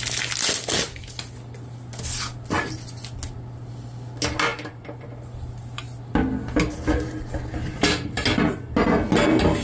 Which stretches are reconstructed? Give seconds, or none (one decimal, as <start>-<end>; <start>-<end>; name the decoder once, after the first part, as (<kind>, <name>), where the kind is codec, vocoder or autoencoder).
4.5-5.1 (vocoder, BigVGAN v2)